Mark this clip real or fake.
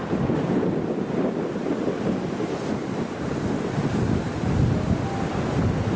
real